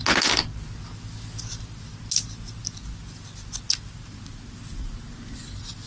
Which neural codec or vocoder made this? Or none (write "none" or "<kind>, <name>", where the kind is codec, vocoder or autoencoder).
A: none